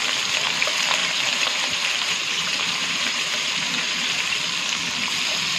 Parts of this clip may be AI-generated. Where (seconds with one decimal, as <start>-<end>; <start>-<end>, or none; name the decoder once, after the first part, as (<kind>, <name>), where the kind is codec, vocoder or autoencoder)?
1.0-4.4 (vocoder, BigVGAN v2)